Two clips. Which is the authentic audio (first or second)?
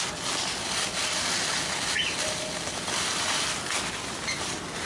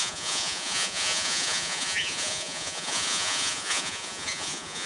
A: first